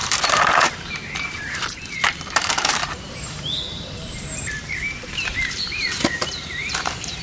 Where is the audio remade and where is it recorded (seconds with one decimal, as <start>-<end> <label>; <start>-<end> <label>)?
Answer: 0.0-7.2 remade